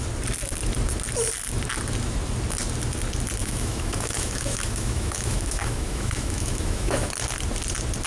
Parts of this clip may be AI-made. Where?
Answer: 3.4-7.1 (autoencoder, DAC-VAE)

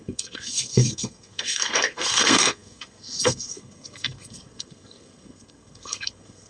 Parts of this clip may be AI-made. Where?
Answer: 0.0-6.5 (codec, SNAC)

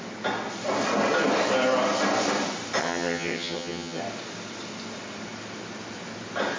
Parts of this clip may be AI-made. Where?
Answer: 2.8-4.0 (vocoder, HiFi-GAN)

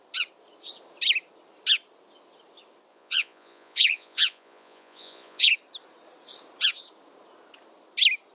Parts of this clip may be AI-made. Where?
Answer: 2.9-5.5 (vocoder, Vocos)

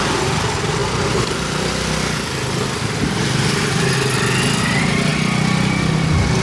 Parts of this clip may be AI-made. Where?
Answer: none

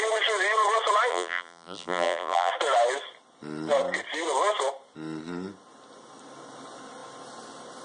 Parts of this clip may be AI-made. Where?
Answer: 1.1-2.5 (vocoder, BigVGAN v2)

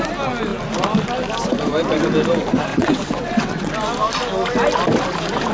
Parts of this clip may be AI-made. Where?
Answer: 2.7-3.7 (vocoder, WaveNeXt)